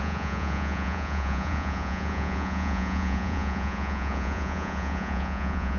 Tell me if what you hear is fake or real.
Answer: fake